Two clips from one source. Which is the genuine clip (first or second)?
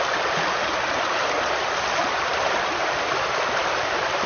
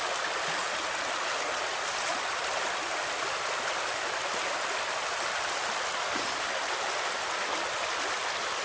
second